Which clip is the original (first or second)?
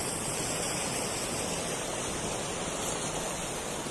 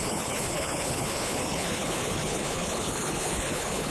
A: first